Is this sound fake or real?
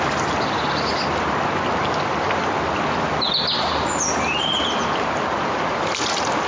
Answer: real